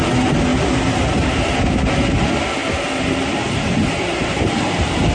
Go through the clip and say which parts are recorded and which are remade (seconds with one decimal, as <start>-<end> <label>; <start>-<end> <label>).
0.0-5.1 recorded